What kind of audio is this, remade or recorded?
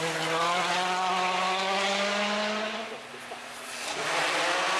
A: recorded